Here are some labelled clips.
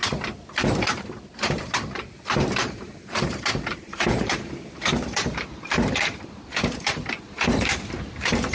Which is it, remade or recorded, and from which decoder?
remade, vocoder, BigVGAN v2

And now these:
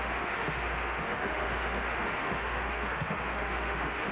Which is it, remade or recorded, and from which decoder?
remade, autoencoder, DAC-VAE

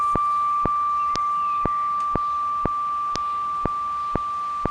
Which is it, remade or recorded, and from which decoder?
recorded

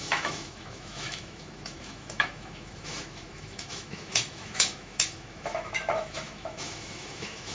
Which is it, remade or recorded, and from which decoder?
remade, autoencoder, DAC-VAE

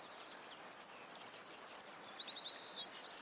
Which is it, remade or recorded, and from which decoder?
recorded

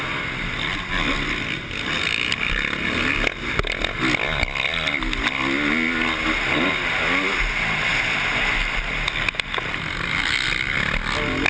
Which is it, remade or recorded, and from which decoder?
recorded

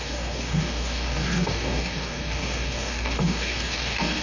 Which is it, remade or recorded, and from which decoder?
remade, codec, DAC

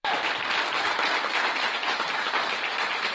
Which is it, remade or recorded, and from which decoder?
remade, vocoder, BigVGAN v2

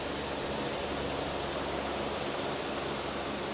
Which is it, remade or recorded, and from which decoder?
recorded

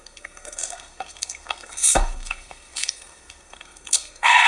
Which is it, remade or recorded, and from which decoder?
remade, codec, SNAC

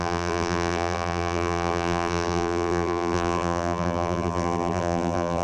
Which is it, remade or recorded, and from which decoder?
remade, vocoder, BigVGAN v2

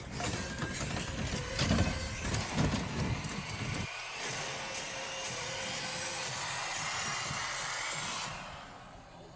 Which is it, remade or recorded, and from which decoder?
recorded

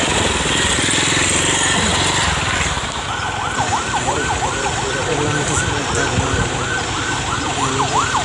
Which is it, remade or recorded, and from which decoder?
recorded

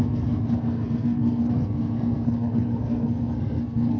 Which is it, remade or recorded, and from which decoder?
remade, codec, SNAC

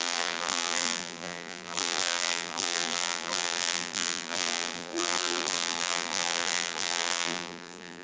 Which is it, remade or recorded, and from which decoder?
remade, vocoder, BigVGAN v2